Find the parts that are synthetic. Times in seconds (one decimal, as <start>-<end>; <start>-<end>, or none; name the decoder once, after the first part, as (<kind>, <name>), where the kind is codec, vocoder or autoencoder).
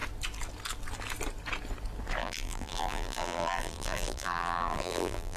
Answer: 2.2-5.4 (vocoder, BigVGAN v2)